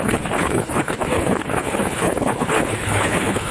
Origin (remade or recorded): remade